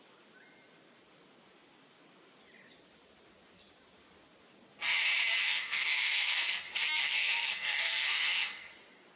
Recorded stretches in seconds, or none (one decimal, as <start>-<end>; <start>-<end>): 0.0-5.4; 6.6-7.0; 8.7-9.2